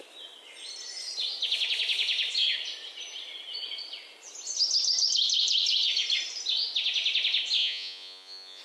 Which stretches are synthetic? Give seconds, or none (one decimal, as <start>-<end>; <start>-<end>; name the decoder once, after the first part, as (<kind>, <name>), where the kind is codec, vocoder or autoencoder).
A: 7.6-8.6 (vocoder, Vocos)